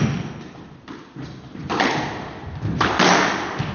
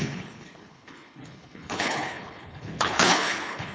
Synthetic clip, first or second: second